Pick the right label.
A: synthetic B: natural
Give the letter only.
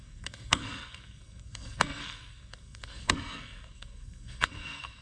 A